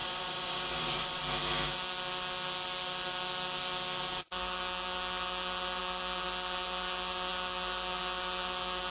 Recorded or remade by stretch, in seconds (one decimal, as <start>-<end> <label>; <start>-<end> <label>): 0.0-1.2 remade; 1.2-8.9 recorded